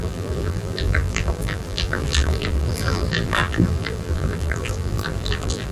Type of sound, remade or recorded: remade